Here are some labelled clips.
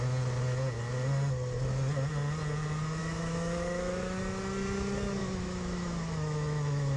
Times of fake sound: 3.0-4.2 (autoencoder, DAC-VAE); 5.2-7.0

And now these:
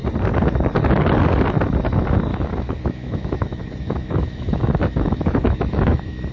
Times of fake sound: 2.3-6.3 (autoencoder, DAC-VAE)